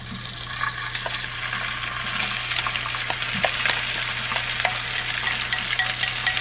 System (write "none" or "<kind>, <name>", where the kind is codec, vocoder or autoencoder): none